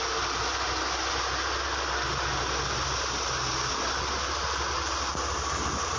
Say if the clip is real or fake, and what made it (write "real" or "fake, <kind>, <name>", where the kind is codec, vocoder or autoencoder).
real